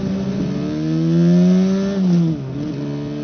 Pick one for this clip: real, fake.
real